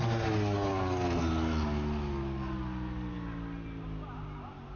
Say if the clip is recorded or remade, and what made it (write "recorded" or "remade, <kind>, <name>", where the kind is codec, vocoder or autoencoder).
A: recorded